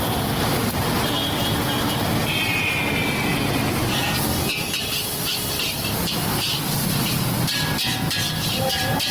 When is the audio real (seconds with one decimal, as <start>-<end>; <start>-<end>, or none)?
2.5-6.8; 7.9-8.7